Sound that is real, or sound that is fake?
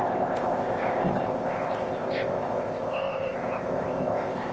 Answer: fake